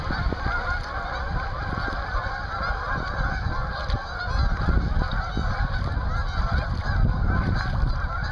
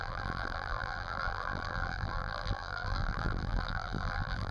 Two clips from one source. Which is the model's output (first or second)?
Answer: second